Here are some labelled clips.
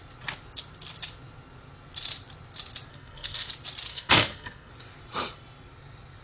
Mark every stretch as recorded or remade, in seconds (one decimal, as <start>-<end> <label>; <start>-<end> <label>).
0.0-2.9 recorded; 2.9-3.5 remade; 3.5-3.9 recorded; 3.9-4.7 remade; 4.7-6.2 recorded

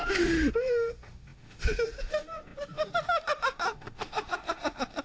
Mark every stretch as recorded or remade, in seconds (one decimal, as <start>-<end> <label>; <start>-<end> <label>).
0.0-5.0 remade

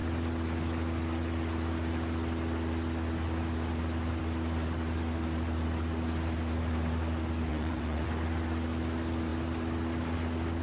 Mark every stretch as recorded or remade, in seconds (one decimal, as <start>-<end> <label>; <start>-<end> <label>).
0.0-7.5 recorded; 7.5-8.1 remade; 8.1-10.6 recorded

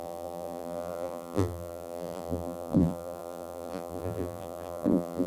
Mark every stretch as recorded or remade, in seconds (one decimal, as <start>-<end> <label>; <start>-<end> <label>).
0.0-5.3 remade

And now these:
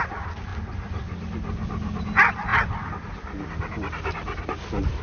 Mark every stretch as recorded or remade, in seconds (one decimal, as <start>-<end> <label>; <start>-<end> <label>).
0.0-5.0 recorded

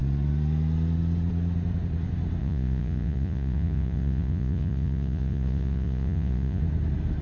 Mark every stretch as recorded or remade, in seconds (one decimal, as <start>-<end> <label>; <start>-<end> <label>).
0.0-2.4 recorded; 2.4-6.6 remade; 6.6-7.2 recorded

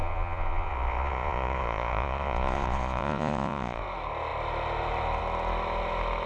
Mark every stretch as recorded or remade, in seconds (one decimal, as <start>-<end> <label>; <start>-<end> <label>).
0.0-3.8 remade; 3.8-6.3 recorded

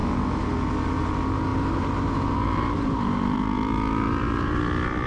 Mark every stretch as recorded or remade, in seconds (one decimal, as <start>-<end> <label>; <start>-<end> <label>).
0.0-1.5 recorded; 1.5-4.6 remade; 4.6-5.1 recorded